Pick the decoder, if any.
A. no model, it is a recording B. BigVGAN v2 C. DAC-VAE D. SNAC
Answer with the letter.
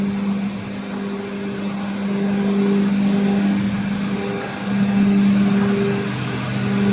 A